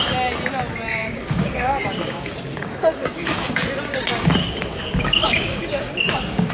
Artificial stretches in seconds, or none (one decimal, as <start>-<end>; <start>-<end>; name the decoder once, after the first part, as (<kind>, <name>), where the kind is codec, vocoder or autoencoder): 1.0-3.6 (codec, DAC); 4.4-6.5